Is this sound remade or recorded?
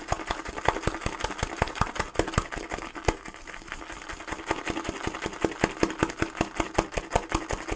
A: recorded